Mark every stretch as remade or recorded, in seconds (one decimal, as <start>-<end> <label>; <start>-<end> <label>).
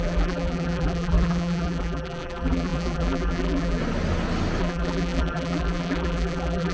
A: 0.0-3.8 remade; 3.8-4.6 recorded; 4.6-6.7 remade